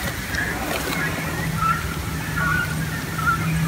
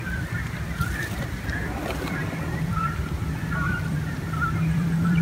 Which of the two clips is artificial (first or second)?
second